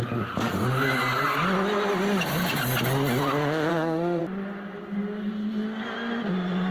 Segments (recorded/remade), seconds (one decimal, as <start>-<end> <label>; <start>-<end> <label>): 0.0-3.7 recorded; 3.7-4.2 remade; 4.2-6.7 recorded